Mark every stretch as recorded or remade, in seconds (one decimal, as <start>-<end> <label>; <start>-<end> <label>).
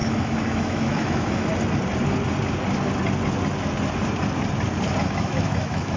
0.0-1.5 remade; 1.5-5.0 recorded; 5.0-6.0 remade